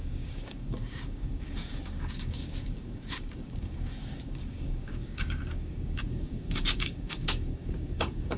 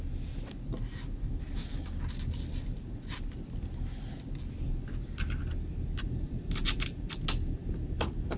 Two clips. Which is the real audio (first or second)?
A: second